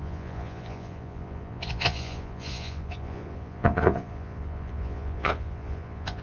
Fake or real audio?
fake